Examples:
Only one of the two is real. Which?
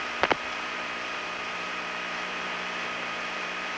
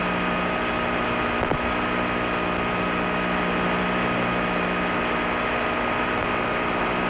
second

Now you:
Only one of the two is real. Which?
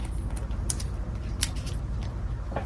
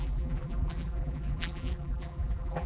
first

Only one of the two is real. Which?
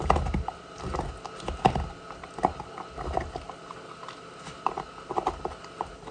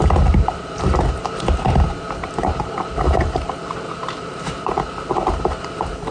first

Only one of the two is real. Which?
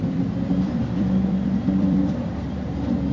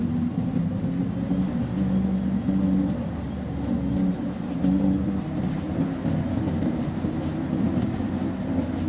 second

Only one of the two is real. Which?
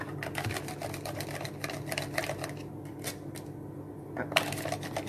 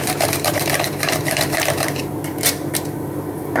first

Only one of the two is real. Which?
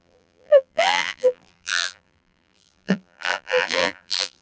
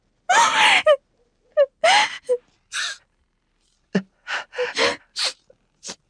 second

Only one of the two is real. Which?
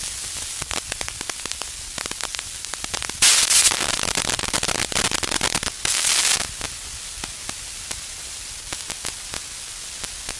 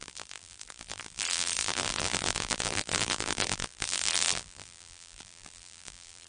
first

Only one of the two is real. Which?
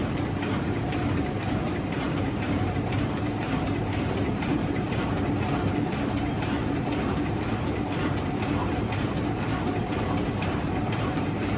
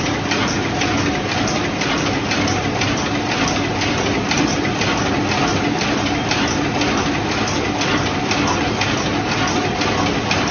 second